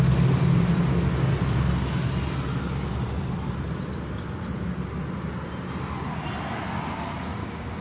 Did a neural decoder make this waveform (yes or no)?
no